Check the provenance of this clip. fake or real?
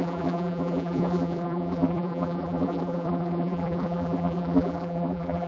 fake